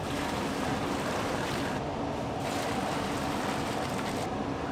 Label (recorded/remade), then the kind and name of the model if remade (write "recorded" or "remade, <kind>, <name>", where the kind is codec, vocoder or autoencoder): recorded